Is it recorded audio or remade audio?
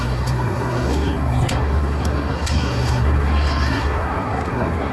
remade